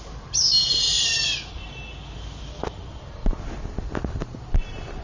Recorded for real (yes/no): yes